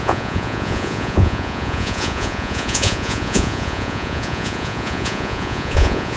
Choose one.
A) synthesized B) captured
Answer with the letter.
A